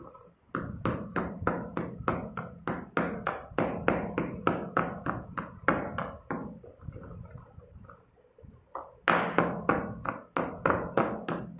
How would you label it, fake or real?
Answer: real